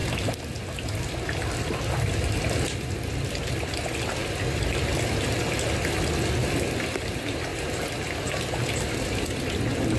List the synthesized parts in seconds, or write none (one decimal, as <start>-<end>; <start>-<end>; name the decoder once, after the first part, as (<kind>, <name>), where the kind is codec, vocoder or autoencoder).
none

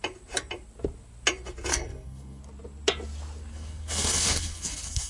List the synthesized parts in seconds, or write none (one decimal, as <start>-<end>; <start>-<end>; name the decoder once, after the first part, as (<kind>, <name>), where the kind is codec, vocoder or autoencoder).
1.7-2.4 (codec, SNAC); 3.5-5.1